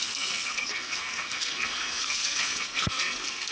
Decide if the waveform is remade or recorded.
remade